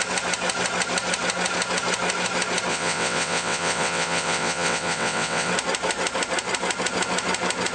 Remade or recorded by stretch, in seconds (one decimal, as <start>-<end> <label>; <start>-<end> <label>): 0.0-2.7 recorded; 2.7-5.5 remade; 5.5-7.7 recorded